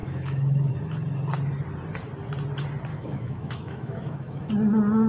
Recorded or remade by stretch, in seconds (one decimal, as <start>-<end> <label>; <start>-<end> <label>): 0.0-0.7 remade; 0.7-2.9 recorded; 2.9-4.5 remade; 4.5-5.1 recorded